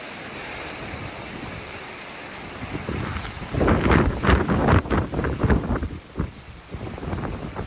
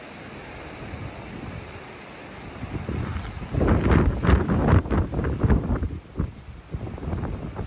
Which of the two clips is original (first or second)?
second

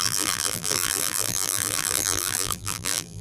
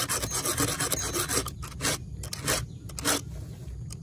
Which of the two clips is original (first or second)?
second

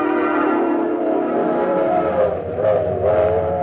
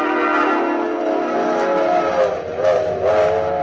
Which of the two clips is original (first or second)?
second